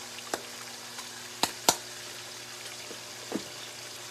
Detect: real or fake real